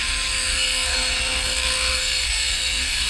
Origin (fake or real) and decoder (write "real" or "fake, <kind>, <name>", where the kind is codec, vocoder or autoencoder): fake, codec, SNAC